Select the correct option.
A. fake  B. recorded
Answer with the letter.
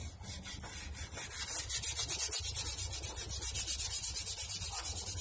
B